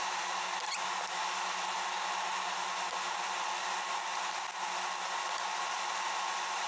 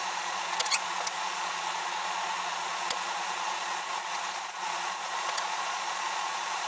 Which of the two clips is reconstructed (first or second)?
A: second